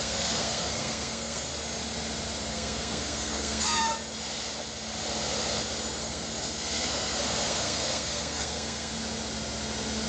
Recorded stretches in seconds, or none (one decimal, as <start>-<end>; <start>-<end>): 1.5-2.5; 3.9-6.0; 8.9-10.1